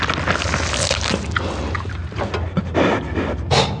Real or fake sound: real